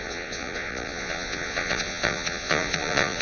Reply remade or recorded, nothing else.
remade